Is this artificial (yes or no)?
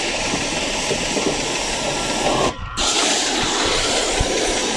yes